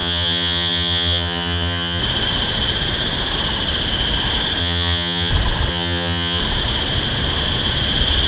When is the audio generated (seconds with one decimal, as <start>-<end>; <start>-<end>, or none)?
0.0-2.0; 4.6-5.3; 5.7-6.4